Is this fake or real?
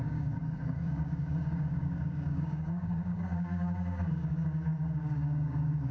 fake